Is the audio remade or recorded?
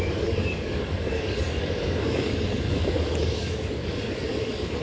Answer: remade